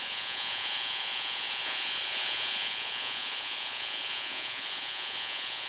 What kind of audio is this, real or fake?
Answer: fake